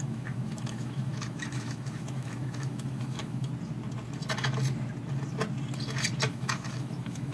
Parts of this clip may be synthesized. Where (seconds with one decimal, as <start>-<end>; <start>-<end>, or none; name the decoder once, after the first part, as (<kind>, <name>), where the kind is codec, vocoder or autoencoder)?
0.0-3.5 (autoencoder, DAC-VAE); 6.3-7.3